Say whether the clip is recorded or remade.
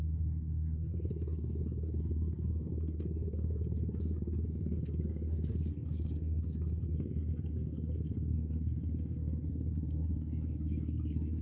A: remade